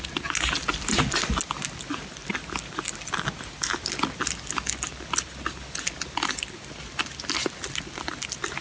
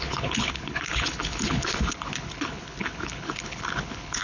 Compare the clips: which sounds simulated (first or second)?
second